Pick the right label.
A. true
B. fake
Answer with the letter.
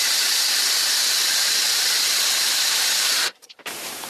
B